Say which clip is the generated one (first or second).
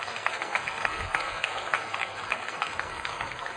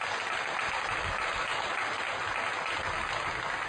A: first